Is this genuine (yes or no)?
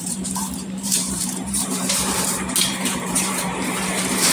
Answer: no